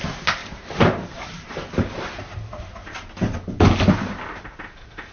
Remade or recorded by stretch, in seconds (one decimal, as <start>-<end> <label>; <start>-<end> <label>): 0.0-0.4 recorded; 0.4-2.6 remade; 2.6-5.1 recorded